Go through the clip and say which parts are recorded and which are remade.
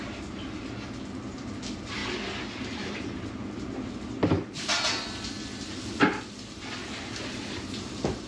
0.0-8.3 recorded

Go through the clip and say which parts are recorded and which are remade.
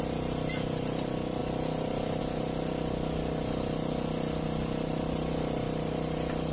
0.0-6.5 recorded